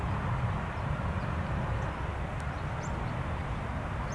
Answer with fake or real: real